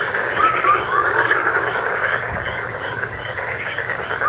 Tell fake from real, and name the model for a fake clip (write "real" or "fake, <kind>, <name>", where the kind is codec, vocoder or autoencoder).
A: fake, codec, DAC